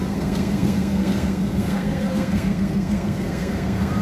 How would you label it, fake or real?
fake